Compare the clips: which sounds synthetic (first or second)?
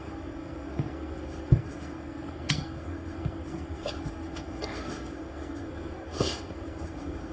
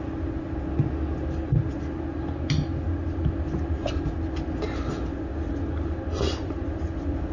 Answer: first